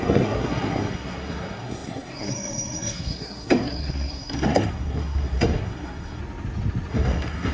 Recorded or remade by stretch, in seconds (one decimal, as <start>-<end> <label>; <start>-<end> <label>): 0.0-6.2 remade; 6.2-6.9 recorded; 6.9-7.5 remade

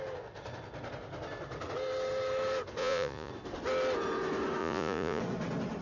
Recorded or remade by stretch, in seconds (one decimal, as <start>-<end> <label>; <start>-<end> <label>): 0.0-2.8 recorded; 2.8-3.3 remade; 3.3-4.6 recorded; 4.6-5.2 remade; 5.2-5.8 recorded

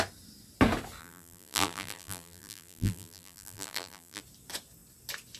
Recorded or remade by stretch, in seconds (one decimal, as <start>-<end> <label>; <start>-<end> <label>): 0.0-1.0 recorded; 1.0-4.2 remade; 4.2-5.4 recorded

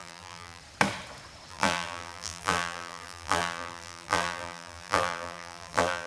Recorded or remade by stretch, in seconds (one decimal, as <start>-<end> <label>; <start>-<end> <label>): 0.0-0.6 remade; 0.6-1.5 recorded; 1.5-6.1 remade

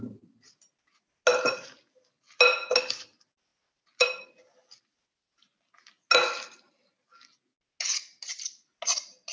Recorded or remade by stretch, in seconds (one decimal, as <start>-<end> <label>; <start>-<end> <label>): 0.0-9.3 recorded